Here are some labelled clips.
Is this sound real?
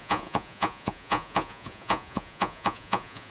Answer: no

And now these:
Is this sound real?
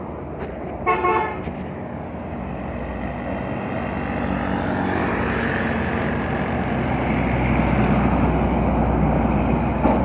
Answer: yes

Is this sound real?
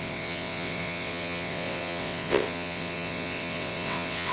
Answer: no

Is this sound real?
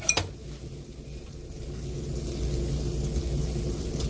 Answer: yes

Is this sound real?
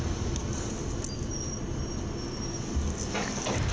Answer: yes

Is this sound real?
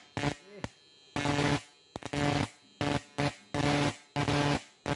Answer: yes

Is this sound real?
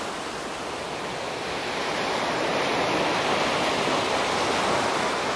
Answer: yes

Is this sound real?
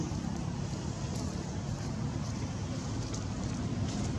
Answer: yes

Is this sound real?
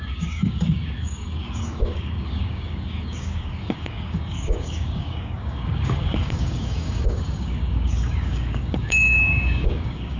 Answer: no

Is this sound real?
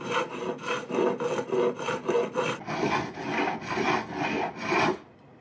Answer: yes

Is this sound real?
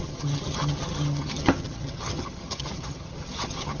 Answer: no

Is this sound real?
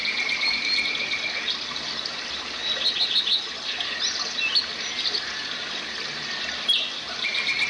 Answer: yes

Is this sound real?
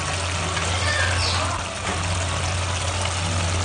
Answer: yes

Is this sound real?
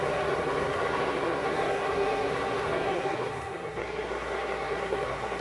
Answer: no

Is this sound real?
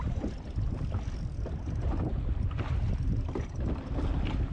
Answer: yes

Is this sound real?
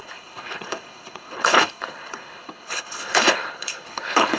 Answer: no